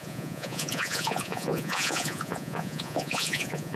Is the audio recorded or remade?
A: remade